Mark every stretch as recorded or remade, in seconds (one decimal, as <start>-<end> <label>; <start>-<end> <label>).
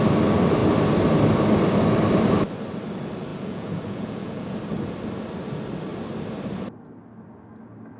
0.0-3.3 recorded; 3.3-4.6 remade; 4.6-8.0 recorded